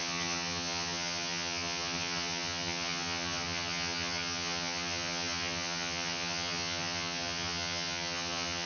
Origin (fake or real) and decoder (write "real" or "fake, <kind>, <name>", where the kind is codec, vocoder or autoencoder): fake, vocoder, HiFi-GAN